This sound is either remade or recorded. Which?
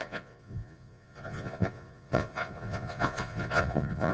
remade